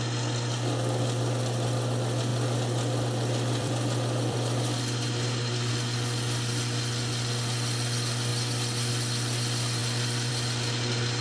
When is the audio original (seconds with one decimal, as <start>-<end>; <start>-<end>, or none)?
0.0-2.3; 5.7-9.8; 10.3-11.2